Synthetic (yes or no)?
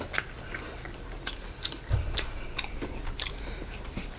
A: yes